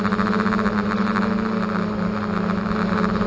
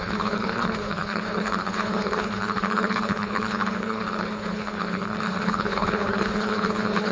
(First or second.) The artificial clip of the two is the second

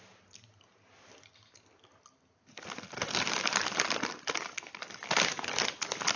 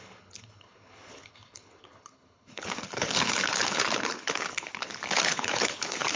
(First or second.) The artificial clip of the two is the second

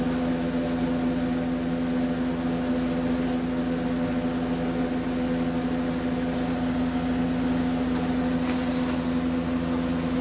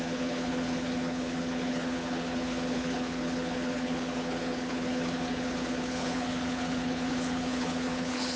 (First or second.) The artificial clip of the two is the second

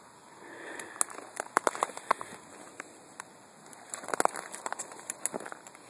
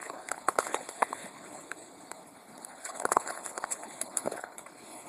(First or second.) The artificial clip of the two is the second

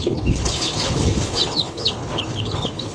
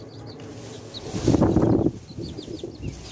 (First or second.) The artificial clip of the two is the first